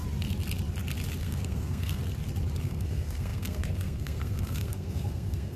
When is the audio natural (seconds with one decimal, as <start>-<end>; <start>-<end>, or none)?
0.0-1.2; 2.0-2.6